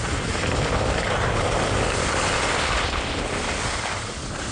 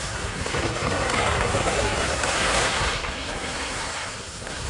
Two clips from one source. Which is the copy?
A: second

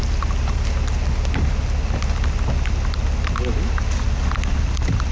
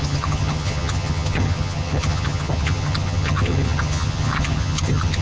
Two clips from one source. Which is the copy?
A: second